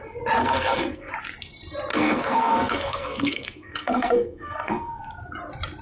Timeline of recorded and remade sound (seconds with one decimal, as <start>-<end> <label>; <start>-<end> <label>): 0.0-0.4 recorded; 0.4-1.1 remade; 1.1-1.9 recorded; 1.9-5.1 remade; 5.1-5.8 recorded